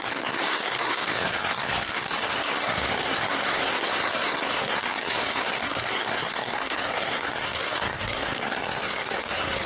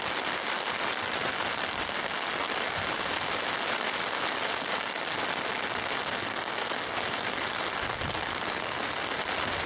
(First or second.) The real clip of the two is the second